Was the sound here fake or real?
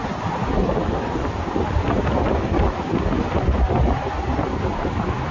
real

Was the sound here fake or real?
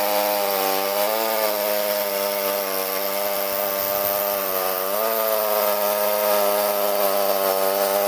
real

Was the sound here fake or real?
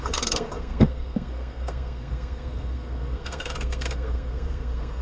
fake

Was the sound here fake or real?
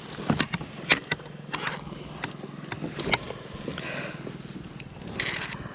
real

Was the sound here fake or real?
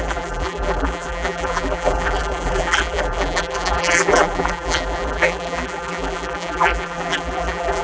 fake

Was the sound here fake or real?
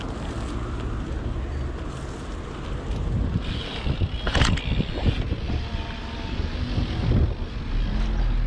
real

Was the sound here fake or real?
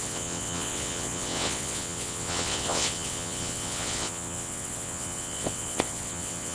fake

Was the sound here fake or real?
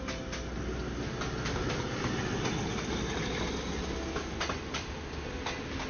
real